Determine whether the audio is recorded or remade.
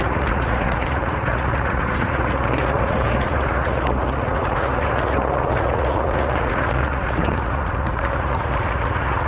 remade